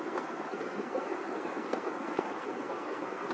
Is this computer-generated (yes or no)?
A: yes